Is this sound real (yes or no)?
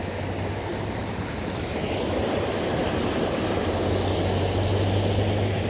yes